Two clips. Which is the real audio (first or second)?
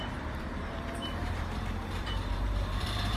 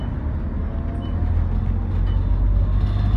second